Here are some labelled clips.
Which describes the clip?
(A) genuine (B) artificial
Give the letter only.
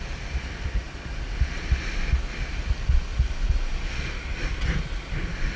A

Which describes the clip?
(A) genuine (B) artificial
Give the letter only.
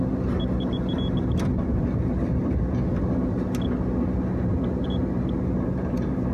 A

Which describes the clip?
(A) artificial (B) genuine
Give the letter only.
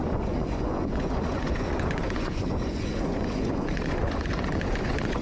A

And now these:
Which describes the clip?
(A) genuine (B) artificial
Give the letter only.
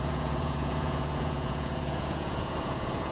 B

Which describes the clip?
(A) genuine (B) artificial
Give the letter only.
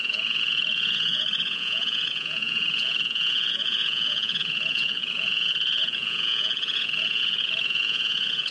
B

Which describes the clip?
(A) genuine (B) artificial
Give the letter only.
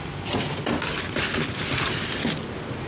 A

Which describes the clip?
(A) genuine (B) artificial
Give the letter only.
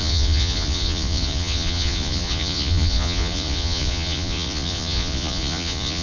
B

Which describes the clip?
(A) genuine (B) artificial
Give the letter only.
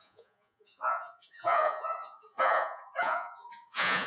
B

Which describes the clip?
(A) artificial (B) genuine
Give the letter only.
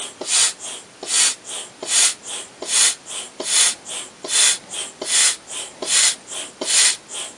B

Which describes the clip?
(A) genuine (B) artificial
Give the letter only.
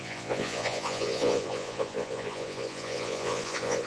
B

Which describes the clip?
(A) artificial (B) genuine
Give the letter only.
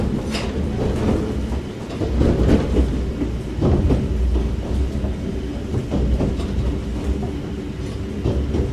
B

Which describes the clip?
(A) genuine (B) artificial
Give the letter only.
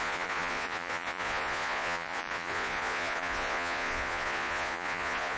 B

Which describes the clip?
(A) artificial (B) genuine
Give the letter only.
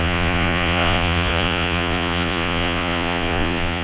A